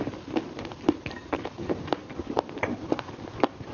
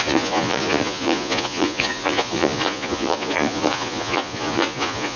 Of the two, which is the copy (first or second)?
second